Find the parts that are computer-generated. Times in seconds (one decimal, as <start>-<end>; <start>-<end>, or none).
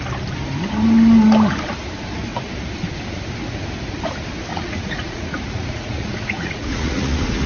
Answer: 4.5-7.5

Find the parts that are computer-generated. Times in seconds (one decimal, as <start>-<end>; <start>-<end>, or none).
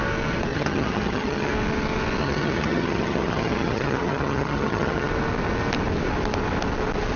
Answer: 0.5-1.5; 2.2-5.1